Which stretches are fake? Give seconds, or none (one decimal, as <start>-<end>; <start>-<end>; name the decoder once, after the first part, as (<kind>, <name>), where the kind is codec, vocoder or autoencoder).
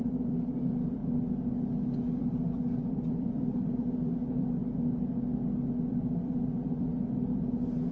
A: 0.0-1.0 (vocoder, BigVGAN v2); 2.9-4.6; 6.2-6.9